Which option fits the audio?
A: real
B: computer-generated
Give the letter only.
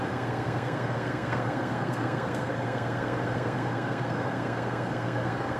B